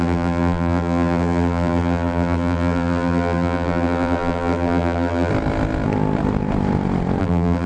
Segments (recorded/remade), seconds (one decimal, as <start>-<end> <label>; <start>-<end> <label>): 0.0-5.3 remade; 5.3-7.2 recorded; 7.2-7.7 remade